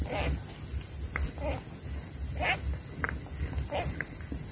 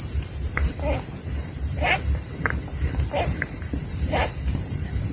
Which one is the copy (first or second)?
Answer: second